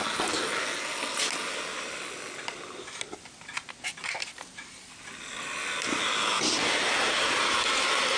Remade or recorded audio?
recorded